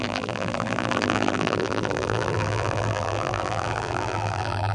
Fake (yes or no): yes